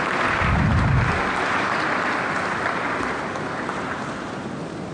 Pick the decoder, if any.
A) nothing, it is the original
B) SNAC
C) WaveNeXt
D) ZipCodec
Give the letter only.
A